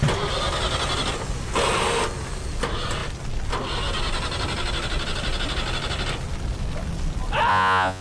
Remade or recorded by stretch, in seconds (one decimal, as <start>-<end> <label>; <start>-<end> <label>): 0.0-7.5 recorded; 7.5-8.0 remade